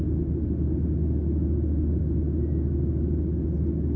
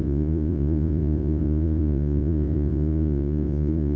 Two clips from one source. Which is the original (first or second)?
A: first